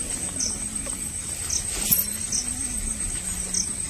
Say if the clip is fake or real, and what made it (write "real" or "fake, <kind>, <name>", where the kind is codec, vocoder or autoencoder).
real